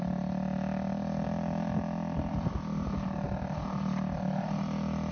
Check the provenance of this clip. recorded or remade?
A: recorded